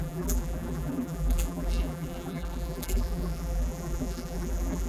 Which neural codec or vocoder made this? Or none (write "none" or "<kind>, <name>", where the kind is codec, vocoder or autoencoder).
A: vocoder, BigVGAN v2